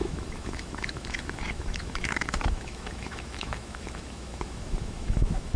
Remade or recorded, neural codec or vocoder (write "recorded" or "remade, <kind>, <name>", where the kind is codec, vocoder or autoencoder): remade, autoencoder, DAC-VAE